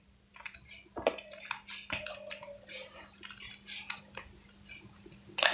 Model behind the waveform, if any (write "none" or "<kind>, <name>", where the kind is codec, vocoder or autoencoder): none